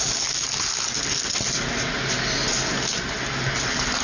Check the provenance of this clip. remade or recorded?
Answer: recorded